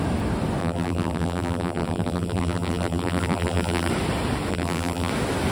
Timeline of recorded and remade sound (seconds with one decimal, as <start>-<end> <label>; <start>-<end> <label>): 0.0-0.6 recorded; 0.6-3.9 remade; 3.9-4.5 recorded; 4.5-5.1 remade; 5.1-5.5 recorded

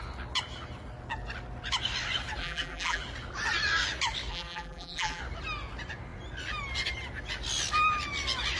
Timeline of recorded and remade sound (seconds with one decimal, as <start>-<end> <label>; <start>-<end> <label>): 0.0-2.4 recorded; 2.4-3.0 remade; 3.0-4.3 recorded; 4.3-5.2 remade; 5.2-8.6 recorded

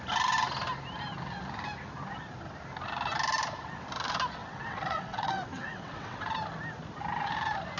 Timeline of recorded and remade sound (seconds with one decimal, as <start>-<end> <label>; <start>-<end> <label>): 0.0-4.4 recorded; 4.4-6.2 remade; 6.2-7.8 recorded

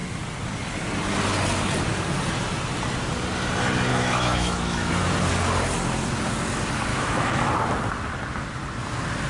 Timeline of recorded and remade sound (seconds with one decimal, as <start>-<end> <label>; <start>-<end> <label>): 0.0-3.9 recorded; 3.9-4.9 remade; 4.9-6.9 recorded; 6.9-7.5 remade; 7.5-9.3 recorded

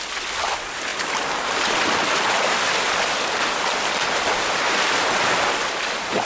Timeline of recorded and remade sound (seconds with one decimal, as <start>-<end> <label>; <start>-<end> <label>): 0.0-6.3 recorded